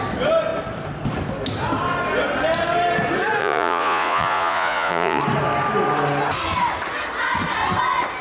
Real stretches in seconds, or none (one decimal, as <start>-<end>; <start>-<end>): 0.0-3.4; 5.2-8.2